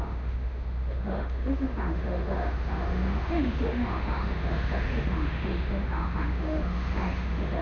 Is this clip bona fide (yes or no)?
no